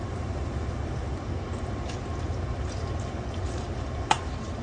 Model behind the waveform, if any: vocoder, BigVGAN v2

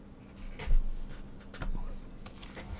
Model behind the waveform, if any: none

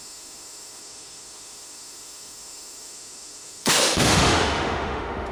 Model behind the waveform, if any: autoencoder, DAC-VAE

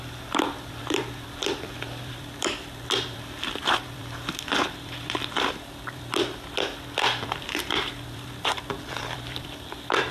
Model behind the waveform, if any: vocoder, BigVGAN v2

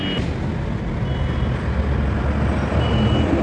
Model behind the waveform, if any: none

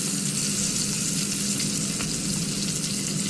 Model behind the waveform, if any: none